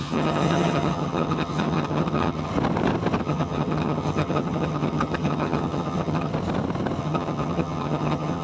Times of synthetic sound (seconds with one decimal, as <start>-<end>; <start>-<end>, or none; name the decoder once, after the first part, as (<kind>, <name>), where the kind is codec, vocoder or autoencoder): 0.0-2.5 (vocoder, HiFi-GAN); 3.2-6.3; 7.0-8.4